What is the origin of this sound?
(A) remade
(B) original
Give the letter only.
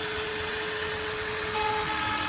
A